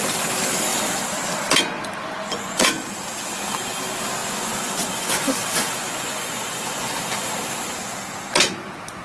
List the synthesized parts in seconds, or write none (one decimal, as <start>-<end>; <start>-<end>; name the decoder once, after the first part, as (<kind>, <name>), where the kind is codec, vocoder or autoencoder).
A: 2.0-2.7 (vocoder, Vocos); 4.2-7.3